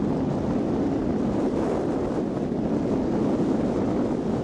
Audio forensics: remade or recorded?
recorded